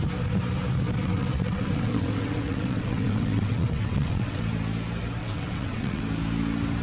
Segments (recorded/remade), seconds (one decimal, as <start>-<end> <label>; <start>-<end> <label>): 0.0-1.0 recorded; 1.0-4.4 remade; 4.4-5.2 recorded; 5.2-6.0 remade; 6.0-6.8 recorded